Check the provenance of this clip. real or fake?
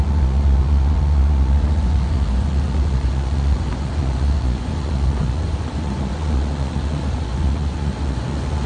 fake